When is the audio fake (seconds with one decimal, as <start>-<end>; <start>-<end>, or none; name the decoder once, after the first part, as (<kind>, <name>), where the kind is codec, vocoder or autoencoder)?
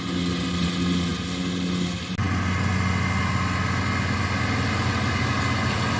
none